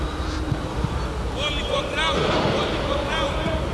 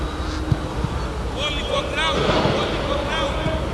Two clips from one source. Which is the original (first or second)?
second